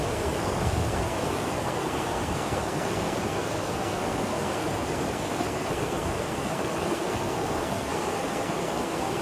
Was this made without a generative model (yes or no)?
no